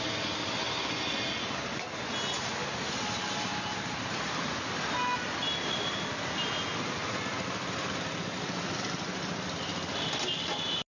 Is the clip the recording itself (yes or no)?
yes